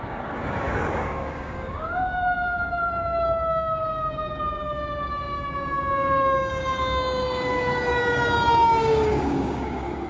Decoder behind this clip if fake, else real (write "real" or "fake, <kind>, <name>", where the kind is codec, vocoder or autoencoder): fake, codec, DAC